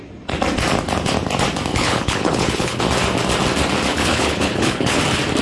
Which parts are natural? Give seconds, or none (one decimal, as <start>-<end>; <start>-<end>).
0.0-1.7; 2.8-3.9; 5.0-5.4